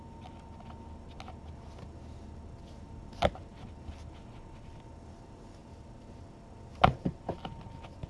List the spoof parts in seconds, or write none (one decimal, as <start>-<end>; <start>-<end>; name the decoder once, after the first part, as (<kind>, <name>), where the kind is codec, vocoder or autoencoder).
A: none